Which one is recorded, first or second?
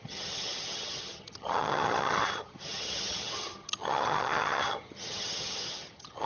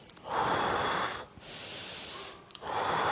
second